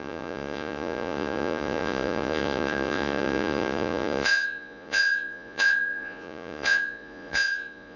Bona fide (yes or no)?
no